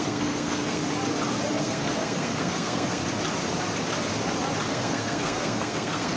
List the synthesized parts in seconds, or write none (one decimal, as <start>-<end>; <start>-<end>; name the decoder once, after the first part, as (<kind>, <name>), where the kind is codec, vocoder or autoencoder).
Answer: 0.0-0.8 (codec, SNAC); 1.6-3.0; 4.7-6.2